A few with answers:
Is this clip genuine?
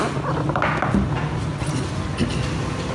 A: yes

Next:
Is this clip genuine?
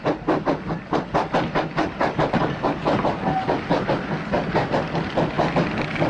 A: yes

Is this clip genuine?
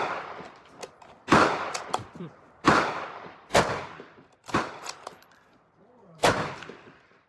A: no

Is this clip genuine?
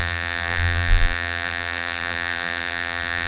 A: no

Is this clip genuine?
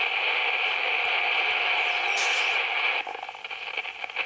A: yes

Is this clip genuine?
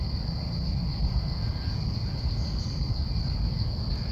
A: yes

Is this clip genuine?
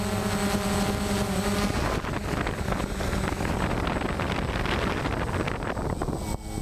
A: yes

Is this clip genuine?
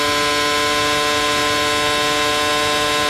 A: yes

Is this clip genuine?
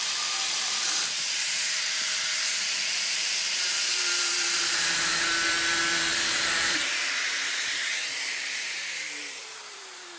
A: no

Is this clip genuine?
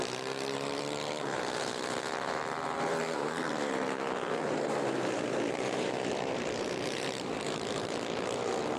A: no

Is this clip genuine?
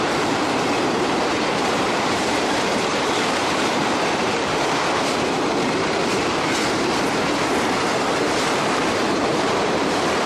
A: no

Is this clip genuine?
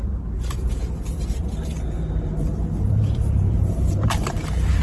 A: no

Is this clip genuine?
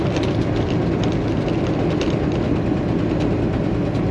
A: yes